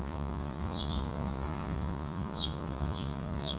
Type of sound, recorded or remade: remade